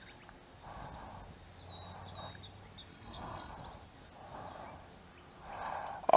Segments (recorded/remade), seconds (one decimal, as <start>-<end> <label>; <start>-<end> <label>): 0.0-2.9 recorded; 2.9-3.5 remade; 3.5-6.2 recorded